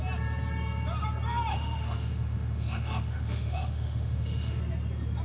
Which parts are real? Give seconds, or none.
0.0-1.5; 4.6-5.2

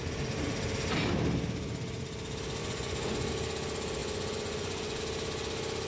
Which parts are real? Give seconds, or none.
0.0-2.6; 3.3-4.0; 5.0-5.9

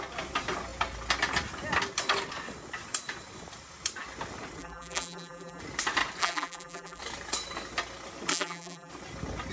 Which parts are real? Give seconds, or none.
0.0-4.6; 5.6-6.2; 7.0-8.3; 8.9-9.5